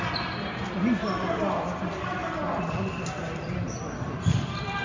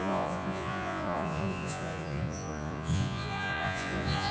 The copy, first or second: second